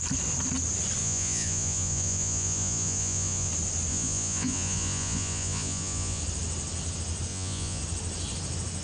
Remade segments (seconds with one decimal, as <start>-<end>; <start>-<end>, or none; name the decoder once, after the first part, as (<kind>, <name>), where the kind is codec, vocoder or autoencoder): 1.0-3.5 (vocoder, Vocos); 3.9-6.2; 7.3-7.8

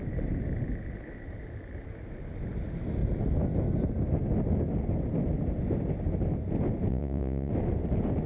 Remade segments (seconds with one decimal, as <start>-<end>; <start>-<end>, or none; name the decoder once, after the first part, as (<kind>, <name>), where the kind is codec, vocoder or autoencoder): 6.9-7.5 (vocoder, Vocos)

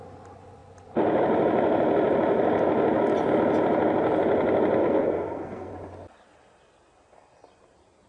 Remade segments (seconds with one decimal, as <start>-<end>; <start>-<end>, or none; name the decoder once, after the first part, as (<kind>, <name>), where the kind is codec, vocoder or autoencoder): 4.8-5.7 (codec, SNAC)

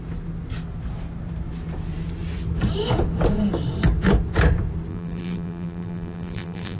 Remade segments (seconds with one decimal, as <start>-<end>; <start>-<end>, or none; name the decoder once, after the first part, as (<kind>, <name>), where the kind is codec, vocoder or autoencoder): 4.9-6.8 (vocoder, BigVGAN v2)

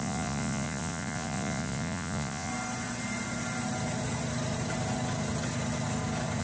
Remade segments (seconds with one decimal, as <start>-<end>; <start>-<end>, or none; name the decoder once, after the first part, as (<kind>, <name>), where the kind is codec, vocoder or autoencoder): 0.0-2.5 (vocoder, Vocos)

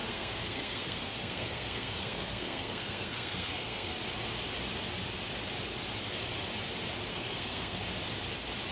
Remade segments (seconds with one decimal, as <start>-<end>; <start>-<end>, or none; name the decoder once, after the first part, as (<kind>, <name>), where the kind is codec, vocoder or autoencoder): 0.0-3.9 (codec, SNAC); 7.1-7.9

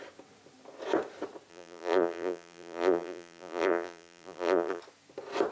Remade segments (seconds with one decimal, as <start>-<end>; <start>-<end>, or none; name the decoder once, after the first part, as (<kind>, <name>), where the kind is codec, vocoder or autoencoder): 1.5-4.8 (vocoder, BigVGAN v2)

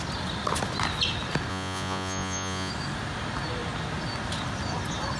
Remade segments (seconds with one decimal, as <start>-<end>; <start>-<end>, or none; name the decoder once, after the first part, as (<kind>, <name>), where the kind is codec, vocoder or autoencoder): 1.5-2.7 (vocoder, Vocos)